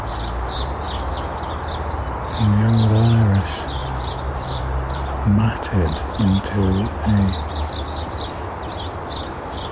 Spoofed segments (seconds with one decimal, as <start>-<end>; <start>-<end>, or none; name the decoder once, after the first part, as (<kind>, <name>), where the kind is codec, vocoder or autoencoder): 3.8-6.2 (vocoder, BigVGAN v2)